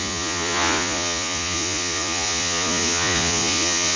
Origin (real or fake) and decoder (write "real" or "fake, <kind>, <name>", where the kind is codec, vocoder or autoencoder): fake, vocoder, Vocos